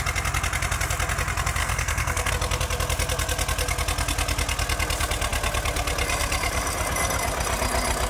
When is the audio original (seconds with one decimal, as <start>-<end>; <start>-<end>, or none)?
0.0-1.6; 2.3-8.1